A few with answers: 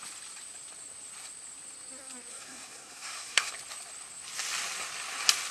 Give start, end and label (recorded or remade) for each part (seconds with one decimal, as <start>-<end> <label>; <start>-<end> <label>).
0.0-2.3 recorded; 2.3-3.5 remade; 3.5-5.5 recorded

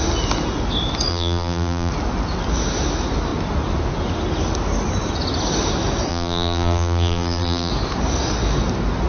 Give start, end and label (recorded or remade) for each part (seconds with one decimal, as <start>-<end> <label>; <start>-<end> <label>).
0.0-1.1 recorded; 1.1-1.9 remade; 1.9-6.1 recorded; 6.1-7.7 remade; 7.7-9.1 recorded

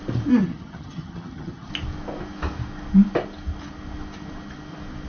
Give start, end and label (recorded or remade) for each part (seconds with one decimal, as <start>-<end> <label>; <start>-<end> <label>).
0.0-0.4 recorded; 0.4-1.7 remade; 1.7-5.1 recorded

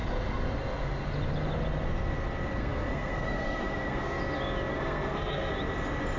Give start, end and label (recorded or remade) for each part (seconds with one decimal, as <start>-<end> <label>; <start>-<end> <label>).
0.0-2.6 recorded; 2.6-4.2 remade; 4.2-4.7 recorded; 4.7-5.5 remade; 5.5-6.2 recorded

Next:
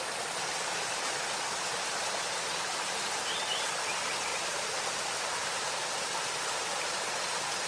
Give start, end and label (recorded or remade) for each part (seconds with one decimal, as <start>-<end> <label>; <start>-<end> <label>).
0.0-7.7 recorded

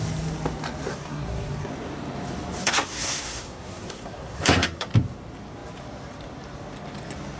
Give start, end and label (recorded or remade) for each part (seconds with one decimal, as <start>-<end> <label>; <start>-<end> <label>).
0.0-0.9 recorded; 0.9-1.7 remade; 1.7-2.6 recorded; 2.6-4.9 remade; 4.9-7.4 recorded

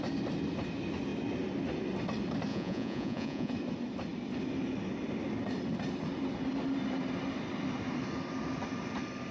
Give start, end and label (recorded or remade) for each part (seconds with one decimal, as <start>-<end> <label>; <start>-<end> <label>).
0.0-2.5 recorded; 2.5-3.5 remade; 3.5-9.3 recorded

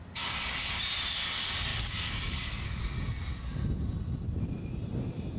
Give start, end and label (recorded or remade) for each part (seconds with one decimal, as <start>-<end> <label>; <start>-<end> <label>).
0.0-1.7 recorded; 1.7-2.8 remade; 2.8-5.4 recorded